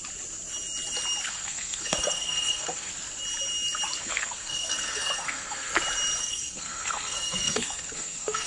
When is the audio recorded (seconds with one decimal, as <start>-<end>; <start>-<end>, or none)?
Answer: 0.0-1.3; 2.9-4.0; 5.7-6.2